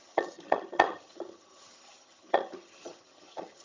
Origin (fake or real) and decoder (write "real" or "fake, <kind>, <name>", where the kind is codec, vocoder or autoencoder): fake, vocoder, HiFi-GAN